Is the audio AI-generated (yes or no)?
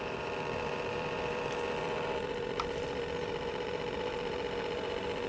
yes